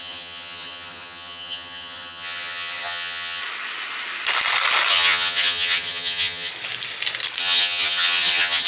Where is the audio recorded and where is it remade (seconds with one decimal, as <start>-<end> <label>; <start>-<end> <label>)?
0.0-3.4 remade; 3.4-4.9 recorded; 4.9-6.5 remade; 6.5-7.4 recorded; 7.4-8.7 remade